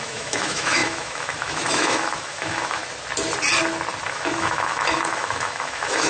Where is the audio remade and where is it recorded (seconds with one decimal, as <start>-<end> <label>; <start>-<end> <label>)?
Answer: 0.0-2.8 remade; 2.8-4.1 recorded; 4.1-6.1 remade